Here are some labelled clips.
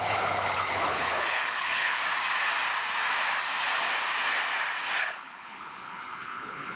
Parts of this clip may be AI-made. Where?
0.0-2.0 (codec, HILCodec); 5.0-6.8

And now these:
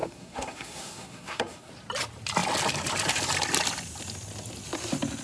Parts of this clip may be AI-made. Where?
0.0-1.7 (codec, SNAC)

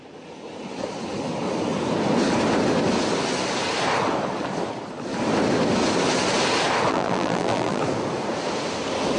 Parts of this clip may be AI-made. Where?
6.9-7.8 (vocoder, BigVGAN v2)

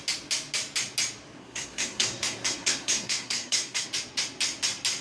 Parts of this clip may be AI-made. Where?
1.4-3.9 (codec, SNAC)

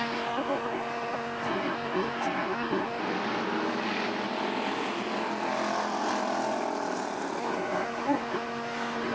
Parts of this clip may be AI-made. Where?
0.0-3.0 (codec, SNAC); 7.4-9.1

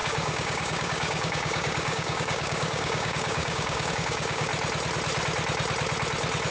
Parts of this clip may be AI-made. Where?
0.0-4.5 (codec, DAC)

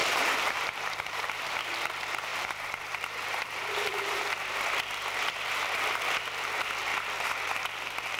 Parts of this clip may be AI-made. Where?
0.0-1.5 (vocoder, BigVGAN v2); 2.3-4.2

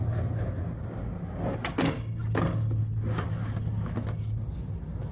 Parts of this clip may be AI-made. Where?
none